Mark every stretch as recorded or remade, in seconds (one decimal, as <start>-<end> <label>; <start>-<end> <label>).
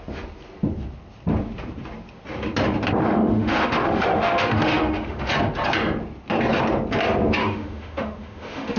0.0-3.0 recorded; 3.0-5.3 remade; 5.3-7.4 recorded; 7.4-8.8 remade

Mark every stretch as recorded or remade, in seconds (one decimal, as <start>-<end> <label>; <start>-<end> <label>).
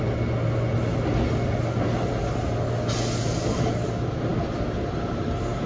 0.0-5.7 recorded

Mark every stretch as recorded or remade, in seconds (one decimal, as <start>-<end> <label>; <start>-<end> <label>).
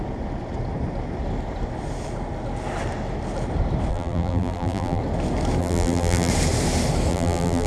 0.0-3.9 recorded; 3.9-5.0 remade; 5.0-5.6 recorded; 5.6-6.3 remade; 6.3-7.1 recorded; 7.1-7.7 remade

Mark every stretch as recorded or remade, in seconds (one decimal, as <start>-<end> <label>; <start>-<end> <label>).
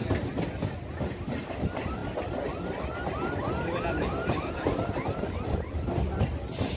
0.0-6.8 recorded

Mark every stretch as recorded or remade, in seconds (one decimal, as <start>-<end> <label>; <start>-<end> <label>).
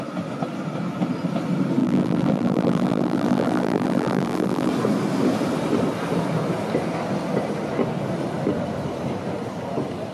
0.0-1.8 recorded; 1.8-4.7 remade; 4.7-10.1 recorded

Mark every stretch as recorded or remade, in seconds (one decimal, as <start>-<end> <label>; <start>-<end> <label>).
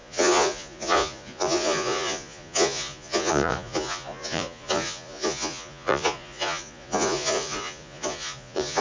0.0-8.8 remade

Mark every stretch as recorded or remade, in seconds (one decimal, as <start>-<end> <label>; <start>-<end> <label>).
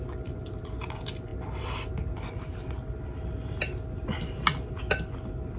0.0-5.6 recorded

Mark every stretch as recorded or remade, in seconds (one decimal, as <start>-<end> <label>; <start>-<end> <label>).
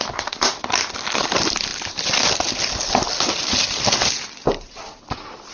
0.0-5.5 recorded